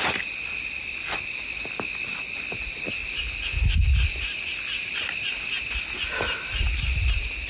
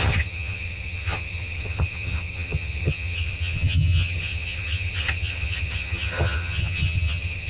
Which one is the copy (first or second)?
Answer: second